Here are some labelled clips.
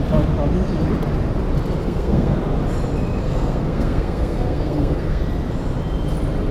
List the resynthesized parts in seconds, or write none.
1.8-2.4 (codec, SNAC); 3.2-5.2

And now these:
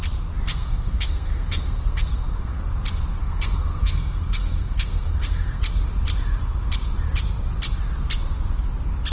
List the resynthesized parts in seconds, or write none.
0.5-2.6 (codec, SNAC); 3.2-5.6